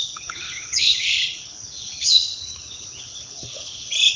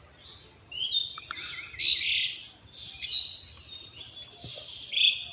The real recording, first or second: second